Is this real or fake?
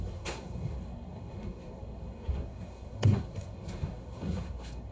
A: fake